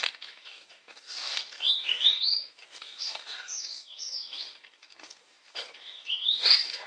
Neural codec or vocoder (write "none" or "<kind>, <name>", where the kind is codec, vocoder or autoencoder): codec, DAC